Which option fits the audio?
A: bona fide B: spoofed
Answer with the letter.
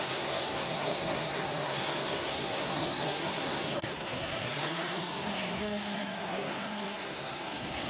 B